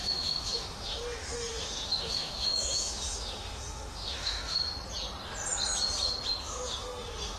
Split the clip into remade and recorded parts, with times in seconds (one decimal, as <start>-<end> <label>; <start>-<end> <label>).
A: 0.0-4.6 remade; 4.6-6.4 recorded; 6.4-7.4 remade